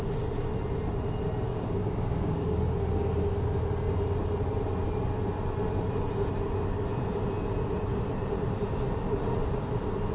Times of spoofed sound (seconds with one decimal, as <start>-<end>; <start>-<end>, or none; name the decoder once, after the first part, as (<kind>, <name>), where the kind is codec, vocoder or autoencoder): 1.5-2.6 (codec, DAC)